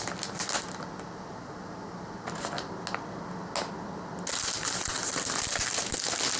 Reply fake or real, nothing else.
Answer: real